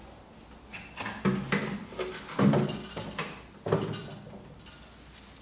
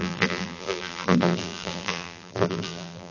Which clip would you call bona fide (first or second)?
first